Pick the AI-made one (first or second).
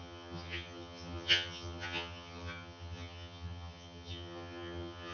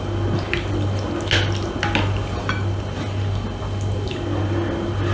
first